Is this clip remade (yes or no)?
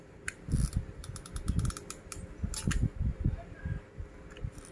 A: no